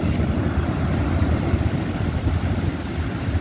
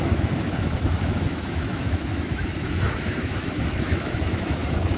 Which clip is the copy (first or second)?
second